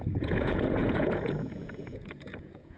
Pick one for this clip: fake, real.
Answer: fake